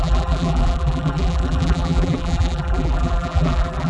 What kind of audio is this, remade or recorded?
remade